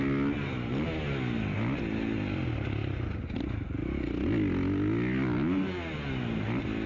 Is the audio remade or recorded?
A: recorded